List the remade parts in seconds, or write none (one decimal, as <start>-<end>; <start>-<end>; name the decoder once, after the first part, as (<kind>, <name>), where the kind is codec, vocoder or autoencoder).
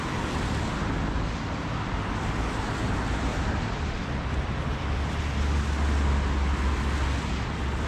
3.3-5.2 (vocoder, BigVGAN v2)